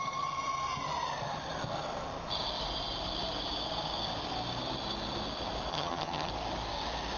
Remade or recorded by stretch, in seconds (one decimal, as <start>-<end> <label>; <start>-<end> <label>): 0.0-5.7 recorded; 5.7-6.3 remade; 6.3-7.2 recorded